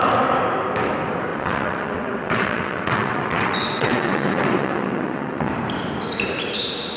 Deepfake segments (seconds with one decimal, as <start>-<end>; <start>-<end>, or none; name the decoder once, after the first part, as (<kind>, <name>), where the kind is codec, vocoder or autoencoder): 1.3-5.5 (vocoder, WaveNeXt)